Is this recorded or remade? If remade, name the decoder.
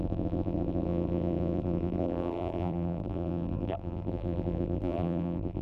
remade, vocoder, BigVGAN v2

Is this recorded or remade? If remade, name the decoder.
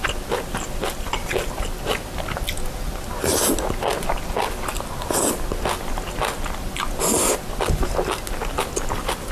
recorded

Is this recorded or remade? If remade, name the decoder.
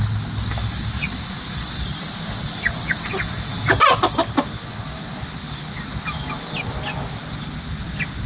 recorded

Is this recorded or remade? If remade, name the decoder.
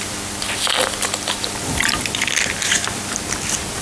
recorded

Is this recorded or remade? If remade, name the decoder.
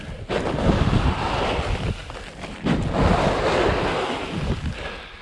recorded